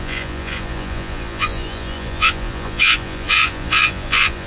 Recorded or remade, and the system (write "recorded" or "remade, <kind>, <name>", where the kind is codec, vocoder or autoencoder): remade, vocoder, Vocos